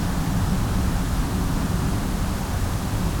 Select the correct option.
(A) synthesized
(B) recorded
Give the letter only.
A